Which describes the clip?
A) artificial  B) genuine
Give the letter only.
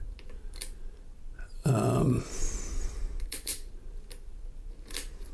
A